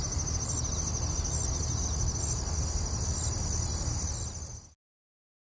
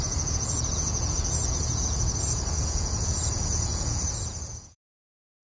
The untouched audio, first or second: first